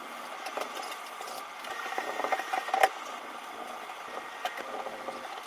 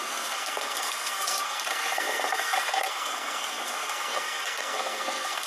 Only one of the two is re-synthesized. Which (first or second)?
second